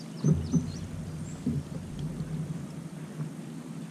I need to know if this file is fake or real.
real